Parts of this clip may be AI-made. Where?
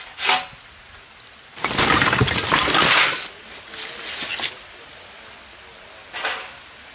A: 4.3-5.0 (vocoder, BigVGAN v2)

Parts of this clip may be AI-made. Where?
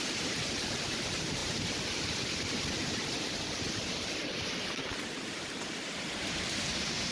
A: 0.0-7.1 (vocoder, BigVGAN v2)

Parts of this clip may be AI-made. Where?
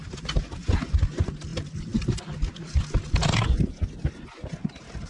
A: none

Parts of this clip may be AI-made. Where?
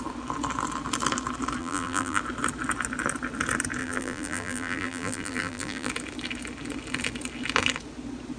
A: 1.6-2.2 (vocoder, BigVGAN v2); 3.8-5.9